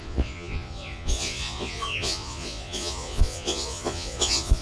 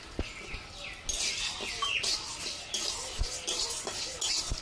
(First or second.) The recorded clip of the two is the second